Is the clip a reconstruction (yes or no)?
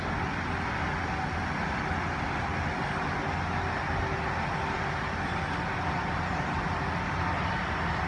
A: no